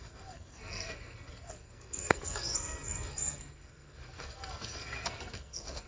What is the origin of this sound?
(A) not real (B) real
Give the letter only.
A